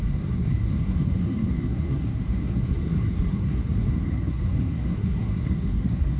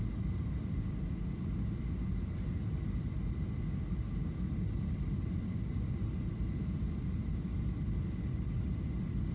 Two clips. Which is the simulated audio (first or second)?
first